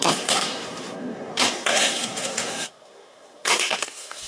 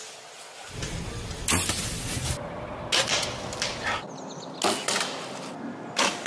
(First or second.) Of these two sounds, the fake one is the first